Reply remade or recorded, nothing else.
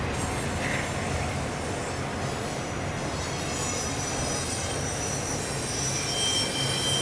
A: recorded